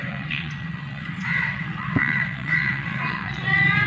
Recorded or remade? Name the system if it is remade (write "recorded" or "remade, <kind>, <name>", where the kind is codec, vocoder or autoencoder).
remade, vocoder, WaveNeXt